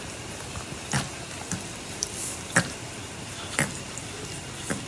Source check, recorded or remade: recorded